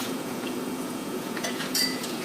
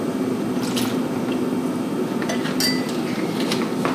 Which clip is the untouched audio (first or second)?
second